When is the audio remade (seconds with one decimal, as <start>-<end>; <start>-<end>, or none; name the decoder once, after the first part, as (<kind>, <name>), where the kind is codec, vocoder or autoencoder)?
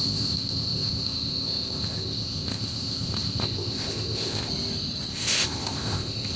0.0-4.5 (codec, ZipCodec); 5.1-6.4